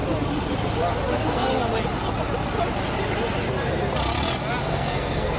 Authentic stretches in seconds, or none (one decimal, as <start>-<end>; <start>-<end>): 0.0-1.1; 1.5-4.6